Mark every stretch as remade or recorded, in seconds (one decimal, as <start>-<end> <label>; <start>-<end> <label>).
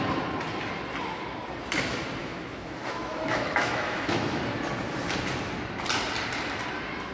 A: 0.0-2.2 recorded; 2.2-4.4 remade; 4.4-7.1 recorded